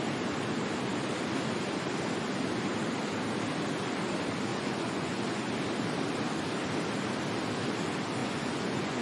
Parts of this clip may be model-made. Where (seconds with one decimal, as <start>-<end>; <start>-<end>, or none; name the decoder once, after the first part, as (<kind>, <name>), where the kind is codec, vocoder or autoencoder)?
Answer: 4.5-5.5 (vocoder, Vocos); 8.2-9.0